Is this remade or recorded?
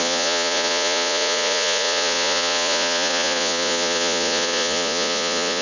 remade